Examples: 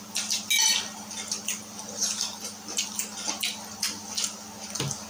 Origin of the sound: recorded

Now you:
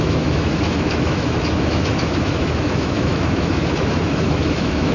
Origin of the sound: remade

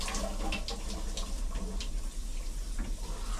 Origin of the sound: recorded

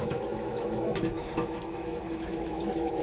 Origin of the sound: remade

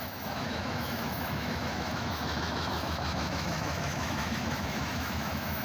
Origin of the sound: remade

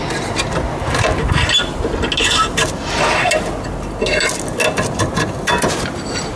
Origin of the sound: recorded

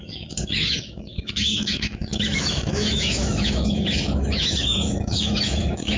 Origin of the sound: remade